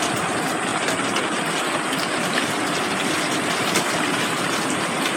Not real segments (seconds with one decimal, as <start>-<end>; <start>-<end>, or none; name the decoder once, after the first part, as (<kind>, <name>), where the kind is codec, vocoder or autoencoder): 0.0-0.7 (vocoder, BigVGAN v2); 3.8-5.2